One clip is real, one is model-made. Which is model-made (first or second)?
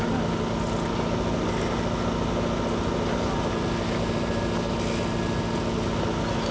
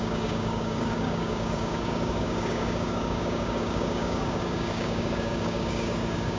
second